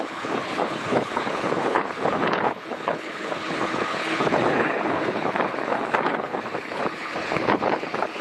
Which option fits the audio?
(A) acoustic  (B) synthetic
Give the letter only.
B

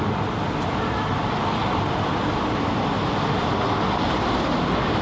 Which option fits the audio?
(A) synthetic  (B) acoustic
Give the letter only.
B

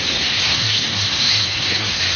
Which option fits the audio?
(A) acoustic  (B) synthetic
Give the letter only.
B